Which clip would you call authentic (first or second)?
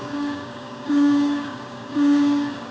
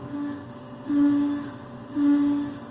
second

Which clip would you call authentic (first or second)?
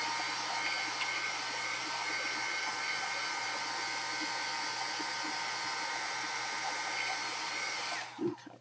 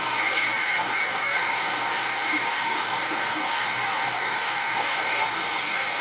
first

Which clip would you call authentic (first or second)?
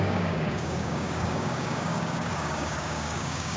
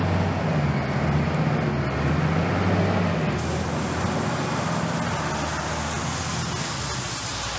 second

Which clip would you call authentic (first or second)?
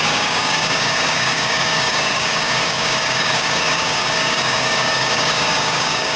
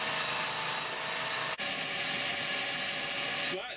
second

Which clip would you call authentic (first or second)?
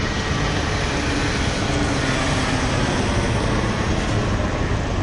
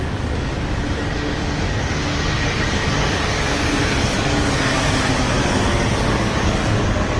first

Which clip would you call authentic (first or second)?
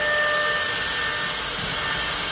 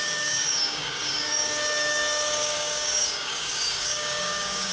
first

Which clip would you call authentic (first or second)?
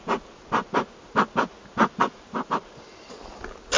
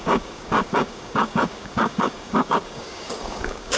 first